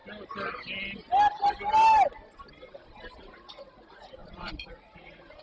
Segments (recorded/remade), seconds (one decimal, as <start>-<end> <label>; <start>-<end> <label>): 0.0-3.2 recorded; 3.2-5.4 remade